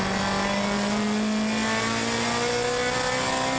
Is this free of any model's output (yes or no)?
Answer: yes